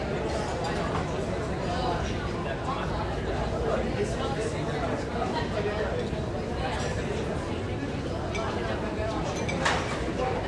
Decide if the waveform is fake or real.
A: real